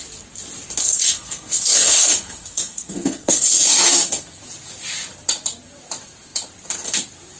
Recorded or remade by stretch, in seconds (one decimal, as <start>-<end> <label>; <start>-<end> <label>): 0.0-0.8 recorded; 0.8-4.4 remade; 4.4-7.4 recorded

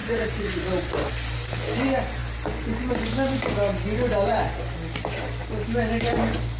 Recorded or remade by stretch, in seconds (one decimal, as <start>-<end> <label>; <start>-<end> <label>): 0.0-1.1 remade; 1.1-6.6 recorded

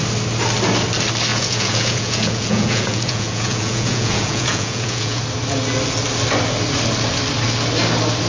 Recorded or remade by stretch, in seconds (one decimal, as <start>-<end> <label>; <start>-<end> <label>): 0.0-1.3 recorded; 1.3-5.2 remade; 5.2-8.3 recorded

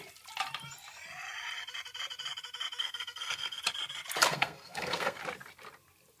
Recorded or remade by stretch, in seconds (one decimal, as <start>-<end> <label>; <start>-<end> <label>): 0.0-2.8 recorded; 2.8-3.6 remade; 3.6-4.3 recorded; 4.3-5.2 remade; 5.2-6.2 recorded

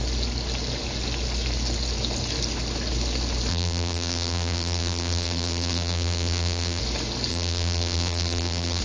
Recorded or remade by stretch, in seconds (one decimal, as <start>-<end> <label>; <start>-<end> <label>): 0.0-3.5 recorded; 3.5-6.8 remade; 6.8-7.3 recorded; 7.3-8.8 remade

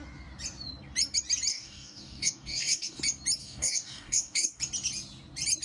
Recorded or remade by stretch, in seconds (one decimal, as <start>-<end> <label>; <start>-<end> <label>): 0.0-1.5 recorded; 1.5-3.0 remade; 3.0-3.4 recorded; 3.4-4.6 remade; 4.6-5.6 recorded

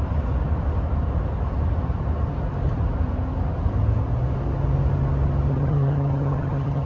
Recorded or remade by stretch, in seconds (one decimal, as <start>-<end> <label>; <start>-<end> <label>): 0.0-5.5 recorded; 5.5-6.9 remade

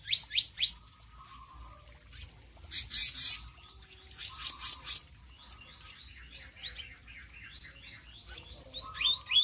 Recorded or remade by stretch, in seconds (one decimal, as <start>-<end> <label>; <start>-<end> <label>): 0.0-9.4 recorded